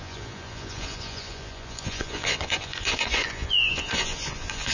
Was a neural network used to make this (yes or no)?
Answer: yes